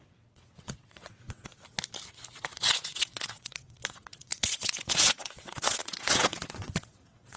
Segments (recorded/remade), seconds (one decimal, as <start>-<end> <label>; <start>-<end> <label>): 0.0-1.5 remade; 1.5-2.4 recorded; 2.4-7.4 remade